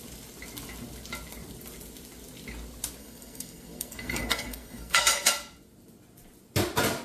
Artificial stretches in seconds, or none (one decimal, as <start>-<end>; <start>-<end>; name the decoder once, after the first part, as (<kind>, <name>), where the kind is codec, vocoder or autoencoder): 3.0-5.3 (codec, SNAC)